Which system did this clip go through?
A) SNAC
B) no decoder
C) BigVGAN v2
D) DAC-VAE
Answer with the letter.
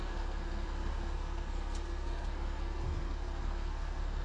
A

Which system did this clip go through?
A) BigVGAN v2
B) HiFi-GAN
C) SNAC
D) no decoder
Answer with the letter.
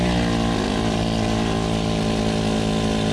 D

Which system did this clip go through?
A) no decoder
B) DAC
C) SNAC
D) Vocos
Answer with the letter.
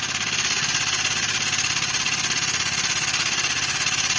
A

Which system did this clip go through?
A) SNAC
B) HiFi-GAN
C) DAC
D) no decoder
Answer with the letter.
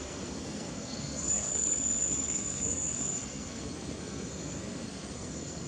A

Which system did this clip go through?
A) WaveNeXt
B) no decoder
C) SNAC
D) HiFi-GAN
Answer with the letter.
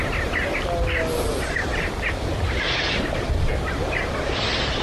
B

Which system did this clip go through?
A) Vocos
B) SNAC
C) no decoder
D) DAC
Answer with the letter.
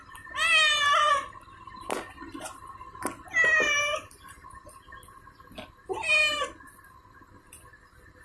C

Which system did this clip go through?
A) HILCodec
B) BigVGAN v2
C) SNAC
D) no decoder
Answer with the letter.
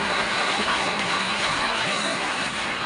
C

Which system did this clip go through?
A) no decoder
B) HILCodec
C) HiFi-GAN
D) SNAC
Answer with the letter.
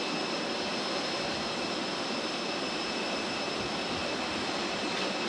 A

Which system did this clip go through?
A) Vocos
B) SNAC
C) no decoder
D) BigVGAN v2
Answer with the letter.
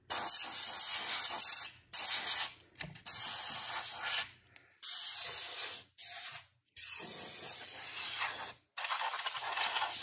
C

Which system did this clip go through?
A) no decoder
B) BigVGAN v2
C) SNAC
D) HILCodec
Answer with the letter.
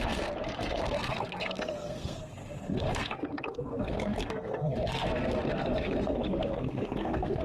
C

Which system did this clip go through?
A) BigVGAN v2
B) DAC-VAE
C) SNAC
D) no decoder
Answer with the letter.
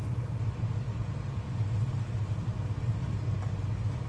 D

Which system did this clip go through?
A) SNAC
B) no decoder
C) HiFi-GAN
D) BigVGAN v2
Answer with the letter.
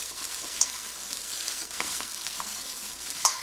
A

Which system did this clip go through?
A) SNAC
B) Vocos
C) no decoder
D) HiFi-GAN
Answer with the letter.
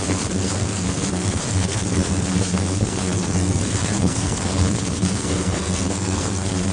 A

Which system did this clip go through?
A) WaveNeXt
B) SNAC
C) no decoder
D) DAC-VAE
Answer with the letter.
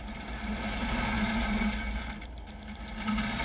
C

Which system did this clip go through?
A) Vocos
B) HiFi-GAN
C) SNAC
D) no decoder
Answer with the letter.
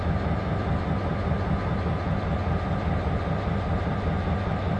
D